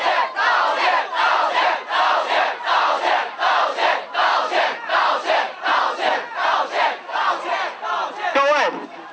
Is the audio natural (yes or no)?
yes